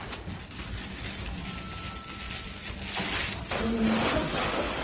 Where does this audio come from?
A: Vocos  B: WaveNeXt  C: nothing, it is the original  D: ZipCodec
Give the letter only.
C